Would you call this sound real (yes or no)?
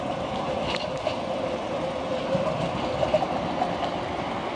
yes